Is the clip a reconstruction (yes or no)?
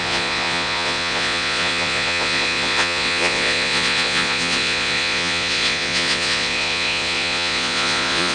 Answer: yes